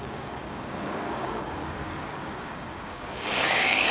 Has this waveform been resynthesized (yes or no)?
yes